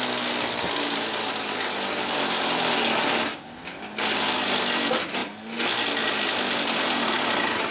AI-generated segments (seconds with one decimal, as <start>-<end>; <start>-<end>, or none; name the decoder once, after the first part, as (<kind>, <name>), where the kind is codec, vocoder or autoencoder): 3.3-3.8 (codec, DAC)